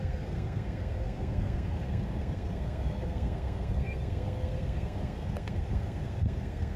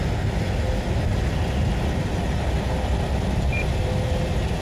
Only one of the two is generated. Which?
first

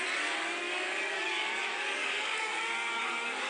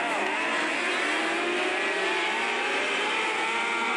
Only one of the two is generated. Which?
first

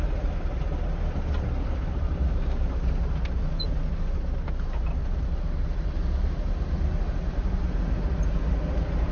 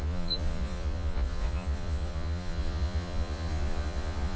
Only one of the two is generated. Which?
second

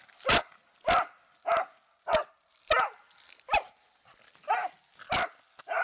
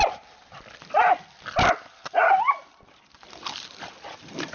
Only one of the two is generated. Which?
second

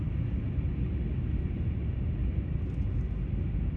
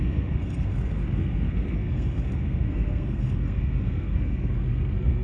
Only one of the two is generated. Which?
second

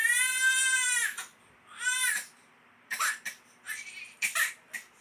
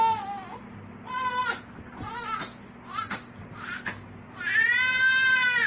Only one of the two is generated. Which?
first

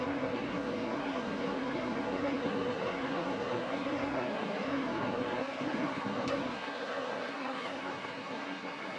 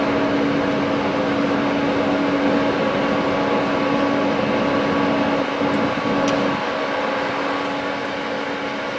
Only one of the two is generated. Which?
first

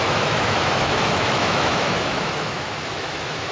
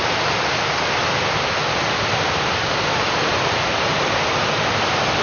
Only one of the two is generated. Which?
first